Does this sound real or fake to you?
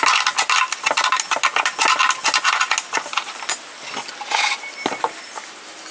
real